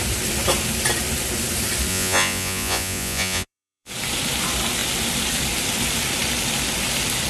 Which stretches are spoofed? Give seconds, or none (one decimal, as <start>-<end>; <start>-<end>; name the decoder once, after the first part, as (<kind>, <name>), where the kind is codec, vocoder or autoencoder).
1.9-3.9 (vocoder, Vocos)